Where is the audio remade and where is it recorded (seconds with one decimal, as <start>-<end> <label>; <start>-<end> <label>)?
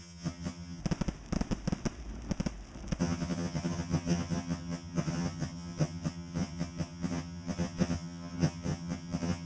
0.0-0.8 remade; 0.8-3.0 recorded; 3.0-9.5 remade